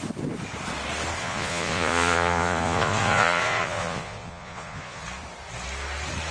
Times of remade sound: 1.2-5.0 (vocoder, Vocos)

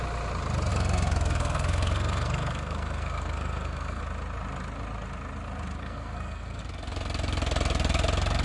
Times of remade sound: 0.7-4.0 (codec, SNAC); 5.8-6.6

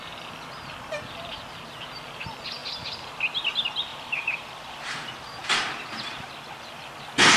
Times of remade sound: 2.6-3.1 (vocoder, BigVGAN v2); 3.9-6.3

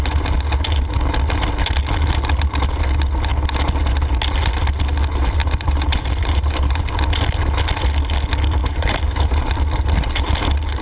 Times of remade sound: 5.4-6.9 (vocoder, BigVGAN v2); 8.6-9.5

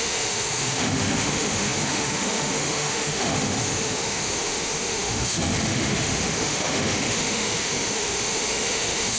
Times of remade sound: 0.0-9.2 (autoencoder, DAC-VAE)

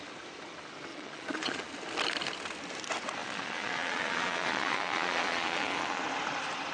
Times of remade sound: 0.9-1.7 (vocoder, Vocos); 3.2-6.0

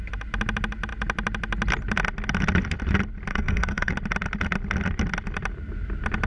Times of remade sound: 3.3-3.9 (codec, SNAC)

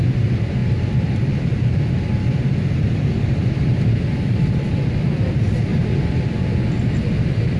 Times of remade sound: 0.6-5.2 (vocoder, BigVGAN v2); 5.7-6.2